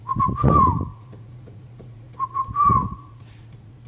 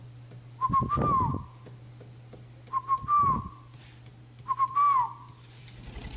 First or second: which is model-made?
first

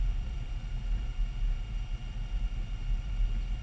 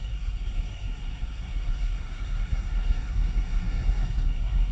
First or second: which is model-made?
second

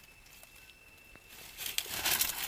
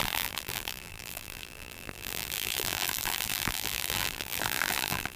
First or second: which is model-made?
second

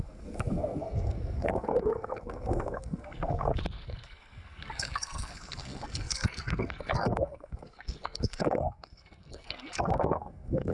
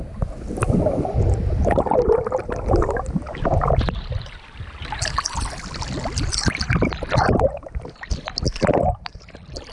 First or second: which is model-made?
first